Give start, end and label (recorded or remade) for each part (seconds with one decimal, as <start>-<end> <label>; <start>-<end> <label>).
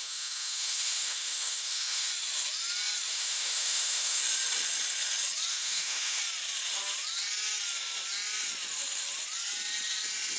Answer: 0.0-2.1 remade; 2.1-3.1 recorded; 3.1-4.2 remade; 4.2-5.5 recorded; 5.5-6.2 remade; 6.2-10.4 recorded